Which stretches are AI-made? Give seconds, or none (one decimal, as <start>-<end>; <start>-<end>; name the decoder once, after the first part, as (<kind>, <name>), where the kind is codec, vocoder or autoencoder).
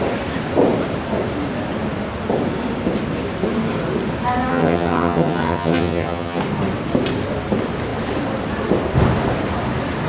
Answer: 4.5-6.4 (vocoder, HiFi-GAN)